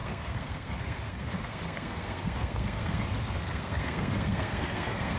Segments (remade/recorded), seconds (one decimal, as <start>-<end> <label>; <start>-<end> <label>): 0.0-5.2 remade